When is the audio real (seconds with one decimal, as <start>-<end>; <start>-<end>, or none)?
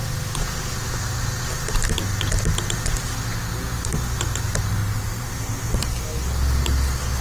0.0-7.2